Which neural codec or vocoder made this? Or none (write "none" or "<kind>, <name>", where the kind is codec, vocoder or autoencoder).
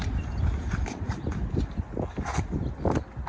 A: none